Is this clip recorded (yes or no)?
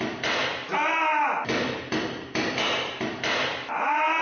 yes